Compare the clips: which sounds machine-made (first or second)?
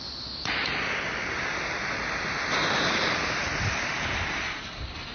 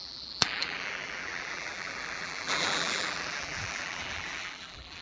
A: second